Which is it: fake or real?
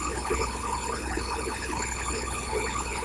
fake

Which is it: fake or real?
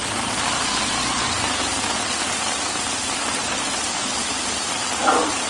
real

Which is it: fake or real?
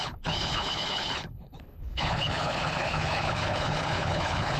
fake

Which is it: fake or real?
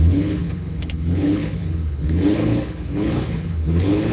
fake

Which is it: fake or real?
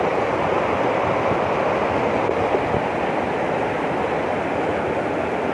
real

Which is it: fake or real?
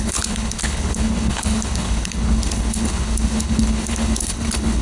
fake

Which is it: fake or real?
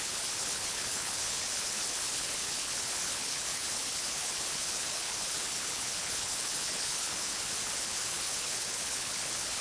fake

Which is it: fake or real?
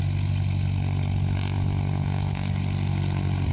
real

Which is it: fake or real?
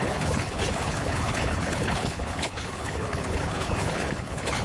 fake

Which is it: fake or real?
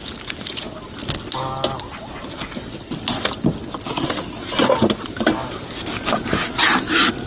real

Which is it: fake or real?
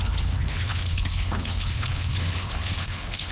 fake